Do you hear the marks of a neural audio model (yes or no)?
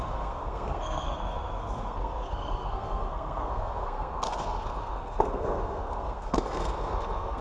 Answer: yes